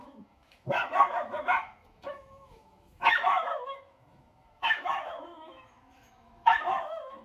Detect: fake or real fake